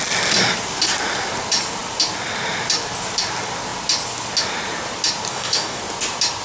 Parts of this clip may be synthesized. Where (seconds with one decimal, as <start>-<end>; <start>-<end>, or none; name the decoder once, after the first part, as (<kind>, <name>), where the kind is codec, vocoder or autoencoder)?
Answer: 5.3-5.8 (codec, DAC)